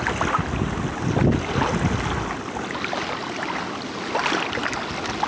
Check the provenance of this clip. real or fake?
real